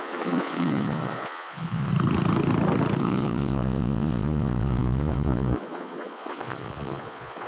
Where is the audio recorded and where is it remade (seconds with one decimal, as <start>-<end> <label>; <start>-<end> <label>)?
0.0-1.9 remade; 1.9-3.0 recorded; 3.0-7.5 remade